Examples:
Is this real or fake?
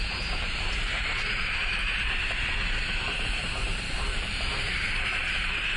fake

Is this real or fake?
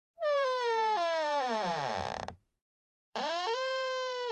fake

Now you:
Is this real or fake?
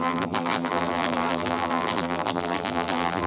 fake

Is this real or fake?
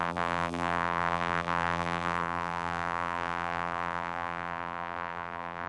fake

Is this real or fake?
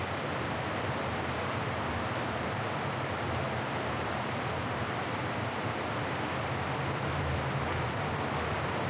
fake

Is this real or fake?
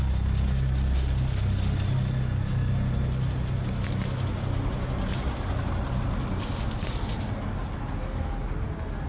real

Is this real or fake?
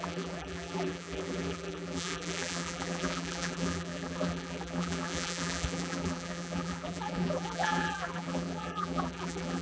fake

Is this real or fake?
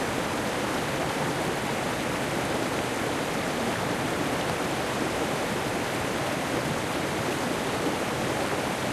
fake